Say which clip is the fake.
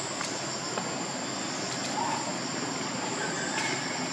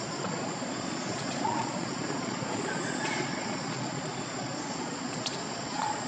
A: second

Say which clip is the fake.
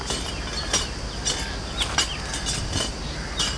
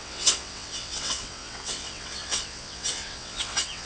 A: second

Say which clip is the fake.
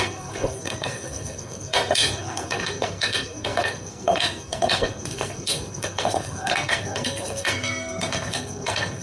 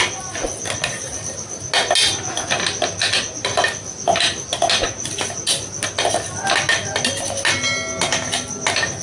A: first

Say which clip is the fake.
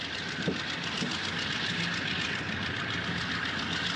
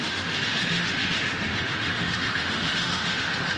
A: second